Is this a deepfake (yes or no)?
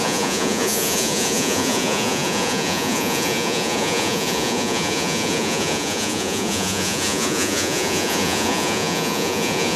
yes